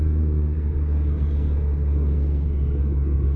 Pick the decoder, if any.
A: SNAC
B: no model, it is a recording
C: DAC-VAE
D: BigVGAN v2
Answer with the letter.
A